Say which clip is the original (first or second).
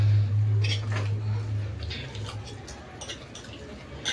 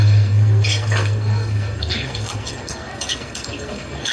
first